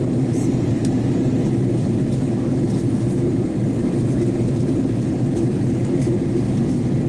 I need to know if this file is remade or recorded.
recorded